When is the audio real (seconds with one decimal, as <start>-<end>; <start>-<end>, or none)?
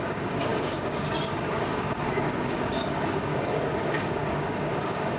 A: none